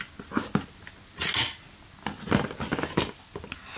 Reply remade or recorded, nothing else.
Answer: recorded